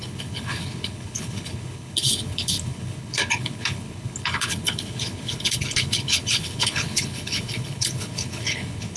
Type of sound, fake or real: fake